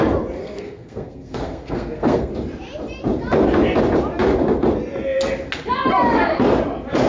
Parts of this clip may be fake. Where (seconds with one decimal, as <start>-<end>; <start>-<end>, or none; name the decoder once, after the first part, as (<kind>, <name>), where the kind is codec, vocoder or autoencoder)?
0.4-2.3 (codec, SNAC)